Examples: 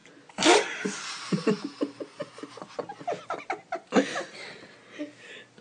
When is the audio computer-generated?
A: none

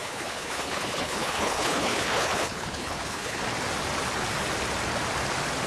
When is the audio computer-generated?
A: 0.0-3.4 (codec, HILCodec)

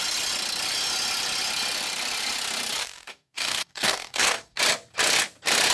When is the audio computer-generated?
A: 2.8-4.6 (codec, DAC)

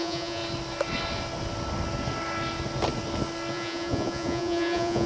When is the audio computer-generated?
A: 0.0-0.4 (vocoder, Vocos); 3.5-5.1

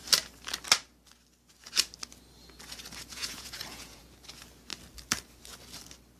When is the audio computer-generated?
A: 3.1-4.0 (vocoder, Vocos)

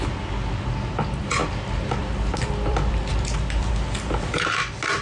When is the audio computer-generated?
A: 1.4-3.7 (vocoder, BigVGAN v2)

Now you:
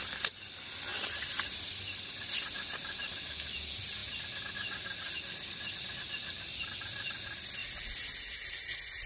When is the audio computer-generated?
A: 0.0-4.0 (vocoder, BigVGAN v2); 4.5-7.6

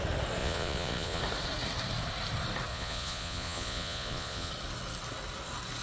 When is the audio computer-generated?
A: 0.4-1.2 (vocoder, Vocos); 2.7-4.5